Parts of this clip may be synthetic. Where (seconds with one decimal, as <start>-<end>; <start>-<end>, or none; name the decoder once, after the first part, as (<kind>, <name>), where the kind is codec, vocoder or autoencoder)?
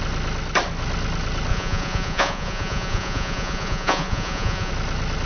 1.5-4.7 (vocoder, Vocos)